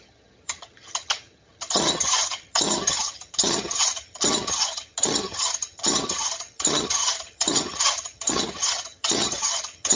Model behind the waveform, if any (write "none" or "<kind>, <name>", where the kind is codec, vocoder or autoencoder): vocoder, HiFi-GAN